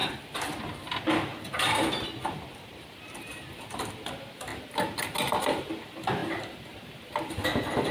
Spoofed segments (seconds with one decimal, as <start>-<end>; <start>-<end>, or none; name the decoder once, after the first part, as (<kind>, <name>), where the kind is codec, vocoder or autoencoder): 0.0-4.5 (vocoder, BigVGAN v2); 5.6-7.9